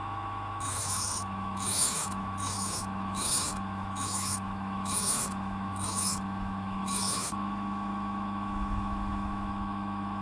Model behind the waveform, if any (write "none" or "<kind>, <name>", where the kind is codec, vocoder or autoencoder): autoencoder, DAC-VAE